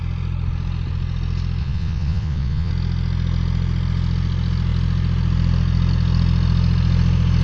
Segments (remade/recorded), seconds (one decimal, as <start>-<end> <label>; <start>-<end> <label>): 0.0-1.6 recorded; 1.6-2.7 remade; 2.7-7.4 recorded

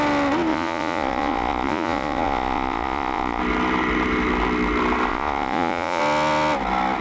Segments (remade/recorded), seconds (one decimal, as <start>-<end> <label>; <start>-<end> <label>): 0.0-0.5 recorded; 0.5-3.4 remade; 3.4-5.1 recorded; 5.1-6.0 remade; 6.0-7.0 recorded

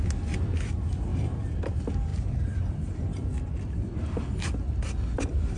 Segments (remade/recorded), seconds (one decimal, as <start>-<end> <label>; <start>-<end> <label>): 0.0-5.6 recorded

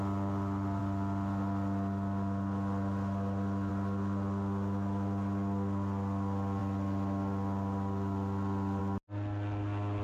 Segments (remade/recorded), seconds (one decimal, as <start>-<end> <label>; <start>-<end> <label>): 0.0-10.0 recorded

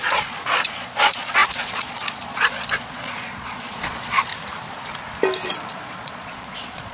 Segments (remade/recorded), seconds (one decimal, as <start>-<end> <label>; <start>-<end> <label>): 0.0-4.3 remade; 4.3-5.5 recorded; 5.5-6.9 remade

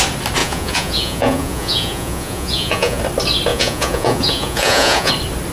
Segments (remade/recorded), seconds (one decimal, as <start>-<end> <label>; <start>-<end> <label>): 0.0-0.4 recorded; 0.4-3.0 remade; 3.0-3.5 recorded; 3.5-5.1 remade; 5.1-5.5 recorded

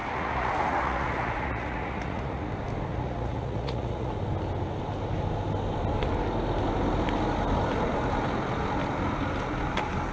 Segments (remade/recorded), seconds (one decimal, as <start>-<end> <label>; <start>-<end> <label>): 0.0-2.5 remade; 2.5-2.9 recorded; 2.9-4.1 remade; 4.1-10.1 recorded

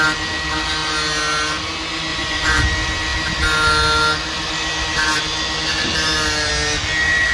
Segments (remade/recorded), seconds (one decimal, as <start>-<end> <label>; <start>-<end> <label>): 0.0-2.1 recorded; 2.1-2.6 remade; 2.6-7.3 recorded